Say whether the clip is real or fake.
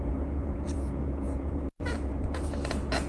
fake